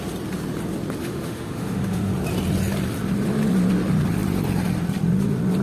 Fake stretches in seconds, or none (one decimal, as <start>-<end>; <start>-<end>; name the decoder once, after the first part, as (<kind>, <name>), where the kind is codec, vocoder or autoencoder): 1.0-2.1 (autoencoder, DAC-VAE)